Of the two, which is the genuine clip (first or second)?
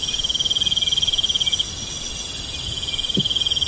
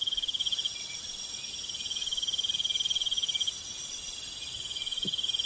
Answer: first